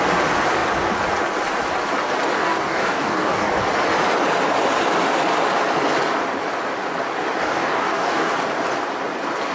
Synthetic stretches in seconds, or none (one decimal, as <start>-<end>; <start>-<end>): 2.4-3.5; 7.4-8.3